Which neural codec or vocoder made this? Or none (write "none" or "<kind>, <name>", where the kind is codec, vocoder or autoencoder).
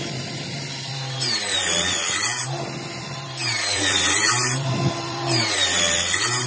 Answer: vocoder, BigVGAN v2